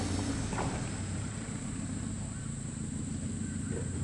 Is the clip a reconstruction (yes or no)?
yes